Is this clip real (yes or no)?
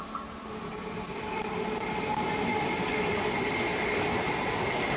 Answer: no